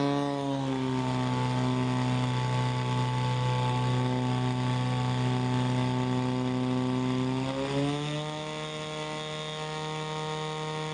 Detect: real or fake real